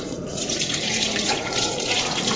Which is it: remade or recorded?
remade